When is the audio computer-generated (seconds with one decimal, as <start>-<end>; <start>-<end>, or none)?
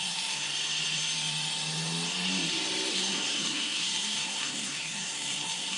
0.0-0.5; 2.9-5.8